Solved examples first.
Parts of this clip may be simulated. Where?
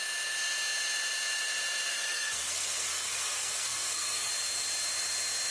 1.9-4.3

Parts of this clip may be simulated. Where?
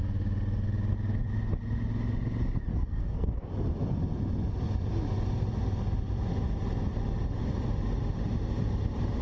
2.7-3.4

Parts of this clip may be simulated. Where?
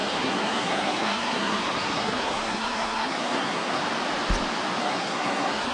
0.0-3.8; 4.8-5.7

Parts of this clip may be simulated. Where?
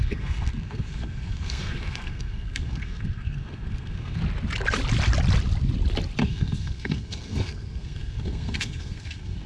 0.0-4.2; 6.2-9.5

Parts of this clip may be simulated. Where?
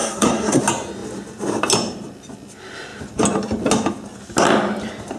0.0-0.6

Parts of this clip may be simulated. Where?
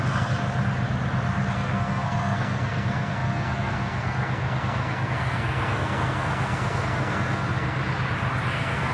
0.0-0.4; 1.5-7.8; 8.5-8.9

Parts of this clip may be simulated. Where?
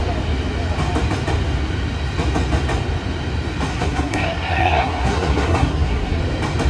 3.7-6.2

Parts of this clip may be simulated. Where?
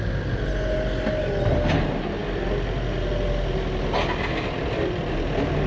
none